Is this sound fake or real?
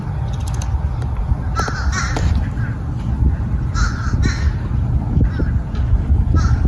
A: real